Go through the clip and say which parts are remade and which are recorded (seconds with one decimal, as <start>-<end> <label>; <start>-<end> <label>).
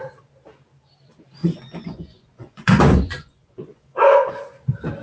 0.0-1.4 recorded; 1.4-4.3 remade; 4.3-5.0 recorded